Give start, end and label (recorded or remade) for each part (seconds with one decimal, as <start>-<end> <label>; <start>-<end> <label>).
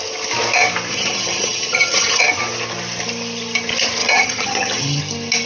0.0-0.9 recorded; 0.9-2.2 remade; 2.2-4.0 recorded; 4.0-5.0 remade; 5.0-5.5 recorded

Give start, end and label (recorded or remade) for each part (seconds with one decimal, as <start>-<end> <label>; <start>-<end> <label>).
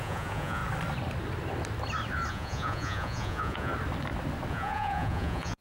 0.0-0.6 remade; 0.6-2.3 recorded; 2.3-3.7 remade; 3.7-4.5 recorded; 4.5-5.6 remade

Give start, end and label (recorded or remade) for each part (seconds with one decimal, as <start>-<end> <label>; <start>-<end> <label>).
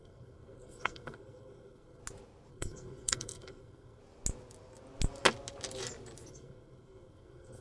0.0-2.0 remade; 2.0-2.5 recorded; 2.5-4.0 remade; 4.0-6.3 recorded; 6.3-7.6 remade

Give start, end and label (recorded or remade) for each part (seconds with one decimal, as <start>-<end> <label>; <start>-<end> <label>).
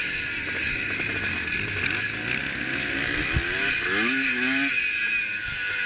0.0-5.9 recorded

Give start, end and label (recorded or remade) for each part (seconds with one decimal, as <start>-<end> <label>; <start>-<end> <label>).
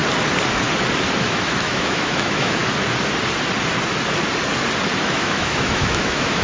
0.0-1.2 recorded; 1.2-2.6 remade; 2.6-5.0 recorded; 5.0-6.4 remade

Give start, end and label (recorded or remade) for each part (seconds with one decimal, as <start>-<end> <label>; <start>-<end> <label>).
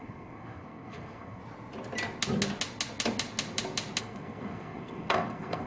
0.0-1.4 remade; 1.4-4.0 recorded; 4.0-5.7 remade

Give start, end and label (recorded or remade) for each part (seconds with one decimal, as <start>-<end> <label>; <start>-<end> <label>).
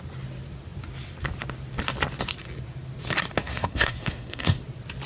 0.0-3.4 recorded; 3.4-4.6 remade; 4.6-5.1 recorded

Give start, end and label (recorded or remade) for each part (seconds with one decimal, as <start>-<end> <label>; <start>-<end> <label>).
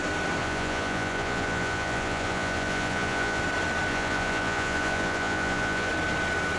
0.0-0.4 recorded; 0.4-3.4 remade; 3.4-3.9 recorded; 3.9-5.9 remade; 5.9-6.6 recorded